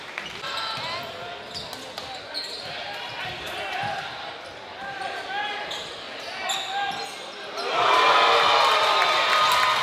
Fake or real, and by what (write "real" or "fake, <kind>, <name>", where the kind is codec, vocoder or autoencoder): real